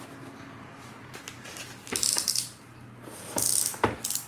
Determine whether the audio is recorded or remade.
recorded